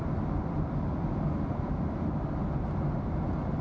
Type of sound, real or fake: real